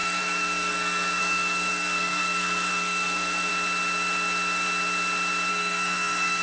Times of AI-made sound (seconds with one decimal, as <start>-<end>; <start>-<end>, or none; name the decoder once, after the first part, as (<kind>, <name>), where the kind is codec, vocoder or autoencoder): 0.0-3.5 (codec, SNAC); 5.5-6.4